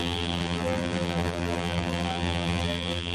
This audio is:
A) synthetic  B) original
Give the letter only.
A